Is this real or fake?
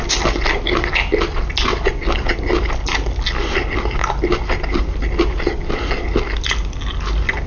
real